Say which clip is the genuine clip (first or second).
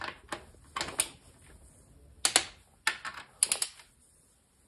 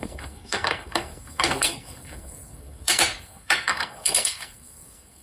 first